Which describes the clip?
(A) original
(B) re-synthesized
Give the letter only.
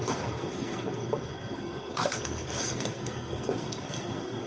B